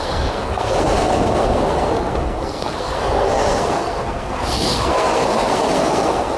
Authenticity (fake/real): fake